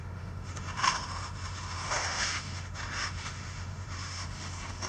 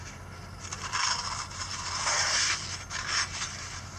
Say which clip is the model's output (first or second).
first